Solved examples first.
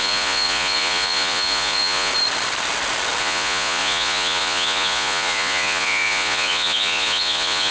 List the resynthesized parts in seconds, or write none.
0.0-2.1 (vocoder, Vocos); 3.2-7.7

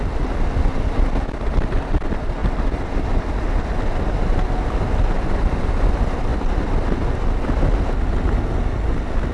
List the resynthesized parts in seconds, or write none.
none

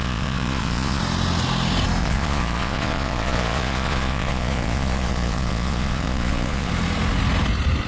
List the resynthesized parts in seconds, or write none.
0.0-1.0 (vocoder, Vocos); 2.0-6.7

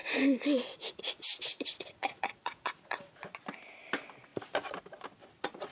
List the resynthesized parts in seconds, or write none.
0.0-3.4 (vocoder, Vocos); 5.2-5.7